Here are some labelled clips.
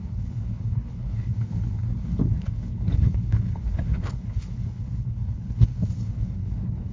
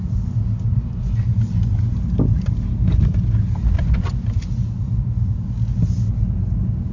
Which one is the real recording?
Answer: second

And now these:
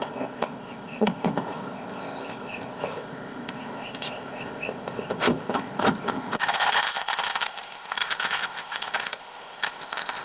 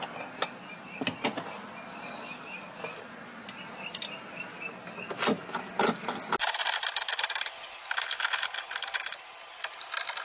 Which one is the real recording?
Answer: second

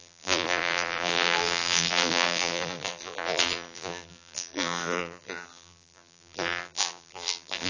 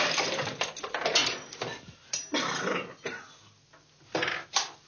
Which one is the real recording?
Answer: second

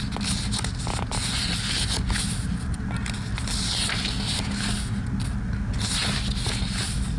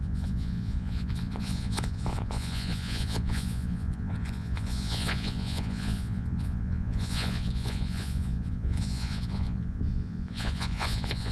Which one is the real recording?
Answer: first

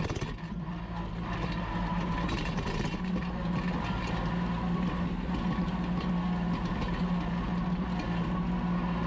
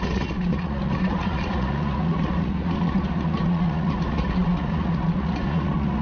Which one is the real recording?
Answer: first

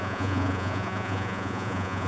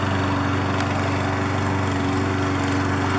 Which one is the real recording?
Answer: second